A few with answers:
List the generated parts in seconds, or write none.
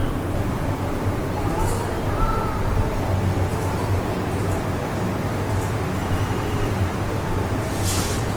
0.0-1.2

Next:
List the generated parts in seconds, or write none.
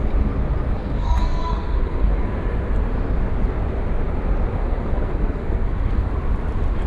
0.8-2.1; 4.5-6.1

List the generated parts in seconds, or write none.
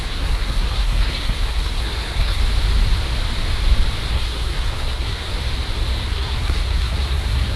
0.0-2.4; 4.1-5.4; 6.1-7.6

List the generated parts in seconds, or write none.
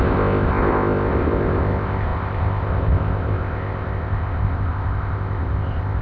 0.0-6.0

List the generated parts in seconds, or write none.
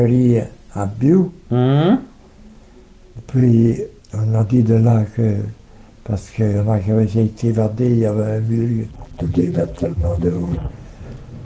8.9-10.7